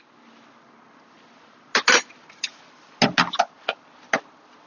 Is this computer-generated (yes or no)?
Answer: no